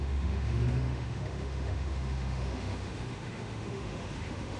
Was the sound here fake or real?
fake